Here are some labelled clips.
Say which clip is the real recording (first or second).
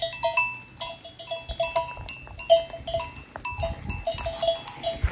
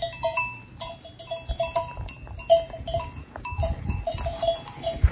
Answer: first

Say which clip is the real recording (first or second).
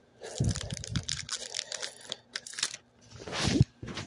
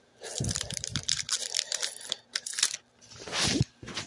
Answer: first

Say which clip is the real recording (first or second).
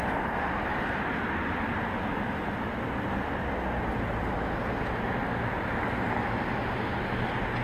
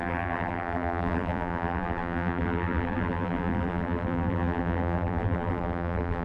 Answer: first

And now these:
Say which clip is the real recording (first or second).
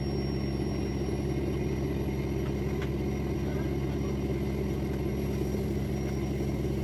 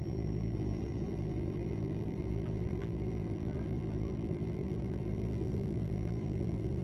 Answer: first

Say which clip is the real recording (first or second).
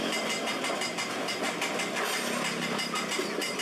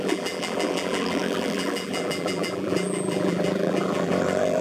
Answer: first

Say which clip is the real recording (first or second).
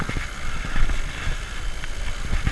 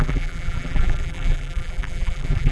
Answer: first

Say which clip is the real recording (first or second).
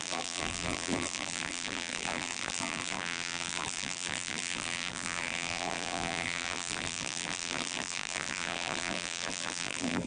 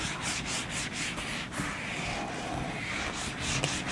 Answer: second